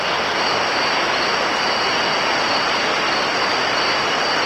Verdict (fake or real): real